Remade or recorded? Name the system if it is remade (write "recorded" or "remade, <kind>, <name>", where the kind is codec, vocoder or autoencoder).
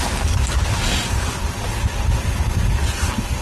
recorded